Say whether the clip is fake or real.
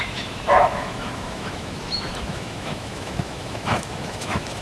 fake